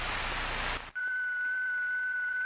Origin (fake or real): fake